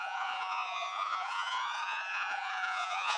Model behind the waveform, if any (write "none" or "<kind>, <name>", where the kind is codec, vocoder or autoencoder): vocoder, Vocos